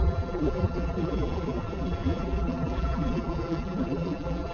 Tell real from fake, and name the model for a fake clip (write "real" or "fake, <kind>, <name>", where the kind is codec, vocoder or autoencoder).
fake, vocoder, BigVGAN v2